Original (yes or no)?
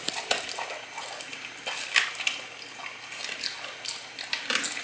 yes